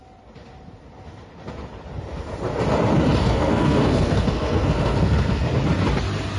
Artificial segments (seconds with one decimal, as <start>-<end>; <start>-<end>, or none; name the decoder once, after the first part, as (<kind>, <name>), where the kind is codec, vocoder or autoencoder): 3.2-5.4 (codec, SNAC)